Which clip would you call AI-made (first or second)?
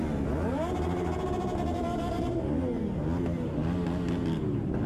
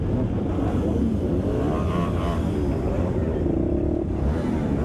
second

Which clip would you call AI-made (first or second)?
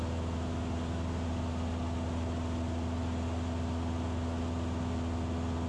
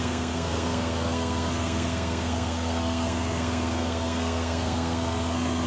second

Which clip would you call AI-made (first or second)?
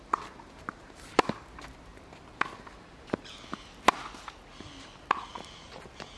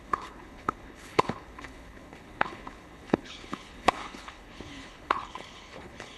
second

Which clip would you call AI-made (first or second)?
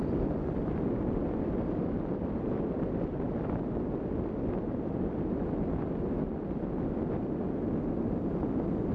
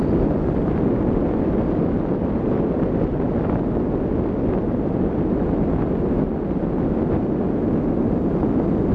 first